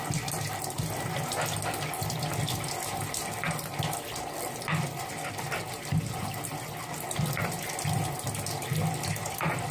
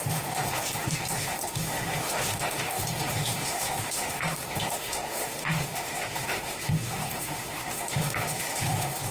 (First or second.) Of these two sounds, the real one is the first